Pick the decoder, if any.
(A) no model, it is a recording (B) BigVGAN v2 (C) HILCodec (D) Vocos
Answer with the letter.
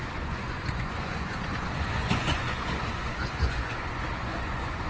D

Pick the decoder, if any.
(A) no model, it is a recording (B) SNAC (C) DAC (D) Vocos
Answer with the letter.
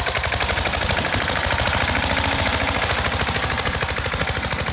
A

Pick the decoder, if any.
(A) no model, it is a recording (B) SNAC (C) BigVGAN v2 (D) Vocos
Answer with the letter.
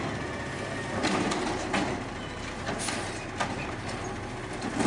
A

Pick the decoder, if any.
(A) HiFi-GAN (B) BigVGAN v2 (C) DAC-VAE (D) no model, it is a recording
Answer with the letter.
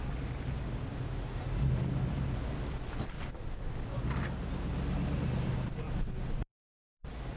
D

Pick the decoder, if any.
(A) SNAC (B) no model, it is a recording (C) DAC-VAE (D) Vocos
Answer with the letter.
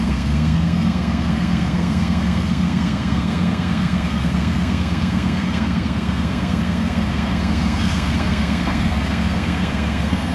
A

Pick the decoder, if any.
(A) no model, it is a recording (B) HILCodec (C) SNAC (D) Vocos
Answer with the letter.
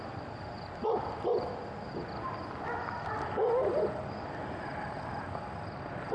A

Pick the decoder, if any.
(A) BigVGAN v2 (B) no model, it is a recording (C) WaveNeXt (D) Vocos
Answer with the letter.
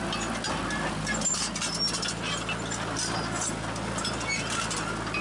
B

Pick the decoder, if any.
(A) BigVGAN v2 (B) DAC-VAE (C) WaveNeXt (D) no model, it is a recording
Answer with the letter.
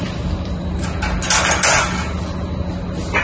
D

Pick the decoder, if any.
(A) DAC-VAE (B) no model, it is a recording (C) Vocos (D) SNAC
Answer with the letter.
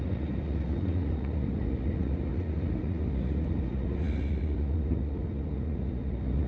C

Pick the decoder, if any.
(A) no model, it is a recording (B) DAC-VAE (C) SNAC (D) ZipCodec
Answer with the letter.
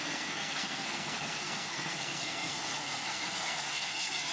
C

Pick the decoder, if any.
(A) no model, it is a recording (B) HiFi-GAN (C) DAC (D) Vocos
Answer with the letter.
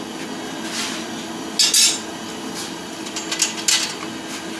A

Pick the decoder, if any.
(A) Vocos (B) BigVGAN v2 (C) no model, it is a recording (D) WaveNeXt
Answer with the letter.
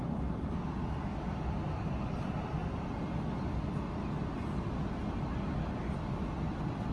C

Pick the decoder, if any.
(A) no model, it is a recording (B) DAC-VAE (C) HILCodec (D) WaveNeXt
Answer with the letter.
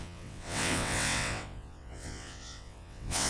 D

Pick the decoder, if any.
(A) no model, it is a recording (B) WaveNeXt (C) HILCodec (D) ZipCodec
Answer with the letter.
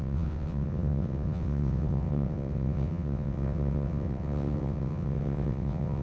B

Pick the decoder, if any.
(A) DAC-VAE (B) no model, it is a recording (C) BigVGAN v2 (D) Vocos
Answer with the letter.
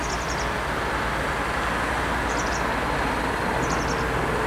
B